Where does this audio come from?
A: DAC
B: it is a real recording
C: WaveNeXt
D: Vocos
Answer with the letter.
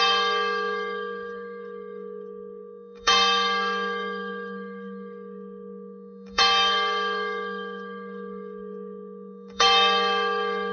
A